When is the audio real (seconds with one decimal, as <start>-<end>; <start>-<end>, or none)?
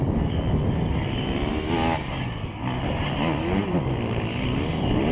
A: 0.0-5.1